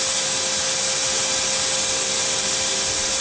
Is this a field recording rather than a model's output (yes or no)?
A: yes